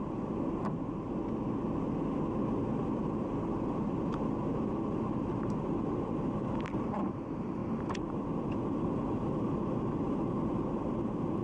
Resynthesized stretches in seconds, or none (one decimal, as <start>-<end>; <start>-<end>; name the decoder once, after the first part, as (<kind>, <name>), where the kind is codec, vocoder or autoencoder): 0.0-1.2 (vocoder, BigVGAN v2); 2.8-11.4